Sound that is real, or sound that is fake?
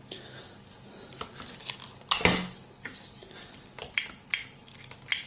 real